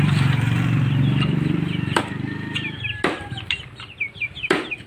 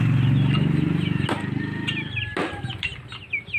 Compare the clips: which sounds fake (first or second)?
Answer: first